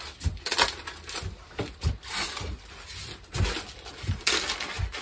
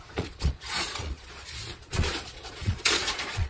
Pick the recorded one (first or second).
first